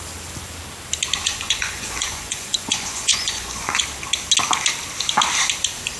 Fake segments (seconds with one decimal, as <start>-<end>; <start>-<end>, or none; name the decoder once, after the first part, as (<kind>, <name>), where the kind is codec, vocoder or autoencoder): 1.2-3.8 (vocoder, Vocos)